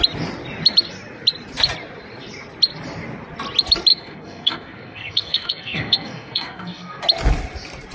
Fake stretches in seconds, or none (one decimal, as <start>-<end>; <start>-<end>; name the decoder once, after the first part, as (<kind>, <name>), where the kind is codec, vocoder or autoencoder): 3.9-7.0 (codec, SNAC)

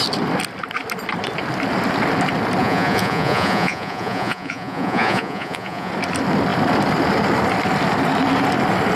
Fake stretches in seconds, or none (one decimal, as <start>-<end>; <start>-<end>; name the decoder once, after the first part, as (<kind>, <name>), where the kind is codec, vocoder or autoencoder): 2.6-5.9 (vocoder, Vocos)

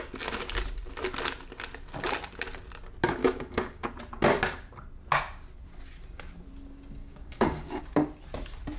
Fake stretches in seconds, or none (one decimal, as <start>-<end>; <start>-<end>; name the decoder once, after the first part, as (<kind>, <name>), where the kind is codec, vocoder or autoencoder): 3.2-3.9 (codec, DAC); 7.0-7.8

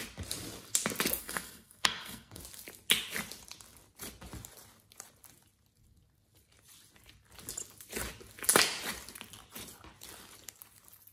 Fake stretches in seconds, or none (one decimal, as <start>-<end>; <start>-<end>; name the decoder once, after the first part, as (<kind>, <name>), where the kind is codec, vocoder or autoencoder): 1.2-2.4 (codec, SNAC)

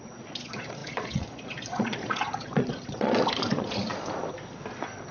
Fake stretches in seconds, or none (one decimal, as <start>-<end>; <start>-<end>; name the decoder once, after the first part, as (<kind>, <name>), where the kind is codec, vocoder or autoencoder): 0.0-3.9 (vocoder, Vocos)

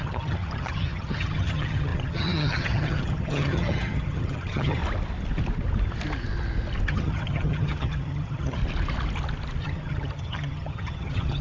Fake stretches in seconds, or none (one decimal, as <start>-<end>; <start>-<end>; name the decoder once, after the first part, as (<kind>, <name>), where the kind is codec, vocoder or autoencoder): 0.0-4.8 (vocoder, HiFi-GAN); 6.9-8.6; 9.6-11.4

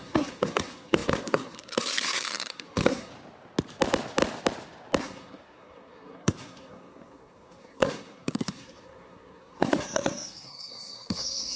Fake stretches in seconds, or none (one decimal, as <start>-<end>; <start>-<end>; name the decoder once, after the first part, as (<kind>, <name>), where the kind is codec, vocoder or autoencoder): 0.0-3.1 (codec, SNAC); 5.0-11.6

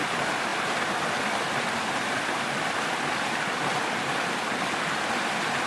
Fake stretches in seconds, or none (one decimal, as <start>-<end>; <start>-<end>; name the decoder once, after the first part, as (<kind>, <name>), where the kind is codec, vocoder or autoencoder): 0.5-2.6 (vocoder, BigVGAN v2)